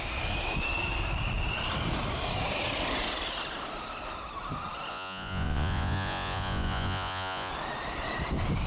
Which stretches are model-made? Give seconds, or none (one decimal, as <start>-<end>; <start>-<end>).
4.9-7.5